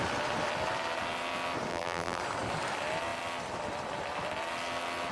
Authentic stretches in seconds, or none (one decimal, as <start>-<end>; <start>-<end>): 0.0-1.7; 2.2-5.1